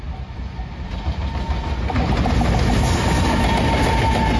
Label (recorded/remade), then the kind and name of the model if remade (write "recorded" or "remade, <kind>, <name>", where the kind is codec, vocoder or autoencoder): recorded